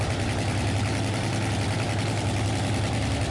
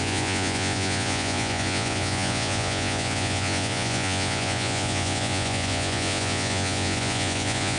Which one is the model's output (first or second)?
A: second